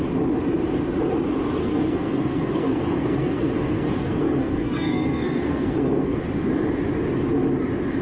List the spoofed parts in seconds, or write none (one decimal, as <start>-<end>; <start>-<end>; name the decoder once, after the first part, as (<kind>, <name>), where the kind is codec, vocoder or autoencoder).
1.6-6.2 (codec, SNAC)